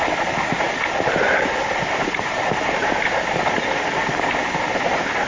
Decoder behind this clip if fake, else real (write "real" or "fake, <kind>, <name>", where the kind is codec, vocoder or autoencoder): real